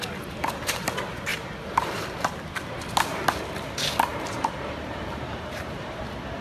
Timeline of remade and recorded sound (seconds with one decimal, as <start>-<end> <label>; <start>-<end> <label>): 0.0-1.3 recorded; 1.3-2.9 remade; 2.9-4.1 recorded; 4.1-6.0 remade; 6.0-6.4 recorded